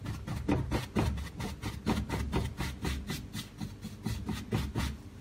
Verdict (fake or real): real